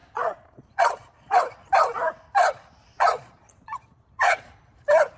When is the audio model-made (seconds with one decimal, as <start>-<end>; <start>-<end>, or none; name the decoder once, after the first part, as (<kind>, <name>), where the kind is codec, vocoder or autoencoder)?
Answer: 0.0-1.4 (vocoder, Vocos); 2.9-4.5